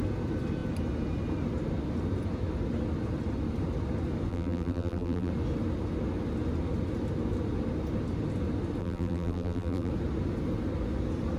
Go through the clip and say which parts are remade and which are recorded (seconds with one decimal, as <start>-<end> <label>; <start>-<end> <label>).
0.0-4.3 recorded; 4.3-5.3 remade; 5.3-8.8 recorded; 8.8-9.9 remade; 9.9-11.4 recorded